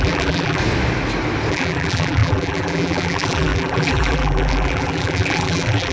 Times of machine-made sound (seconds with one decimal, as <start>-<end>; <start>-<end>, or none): 0.0-0.6; 1.5-5.9